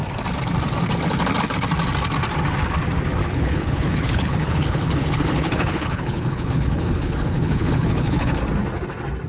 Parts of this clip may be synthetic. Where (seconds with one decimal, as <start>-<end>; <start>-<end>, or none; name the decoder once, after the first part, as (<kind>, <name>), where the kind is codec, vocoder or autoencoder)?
3.2-8.4 (codec, HILCodec)